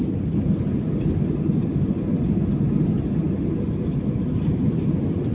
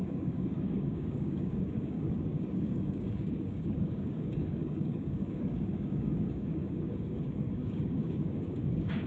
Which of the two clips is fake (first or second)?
second